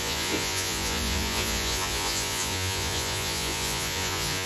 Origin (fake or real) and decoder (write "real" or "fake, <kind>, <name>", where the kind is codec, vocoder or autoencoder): fake, vocoder, Vocos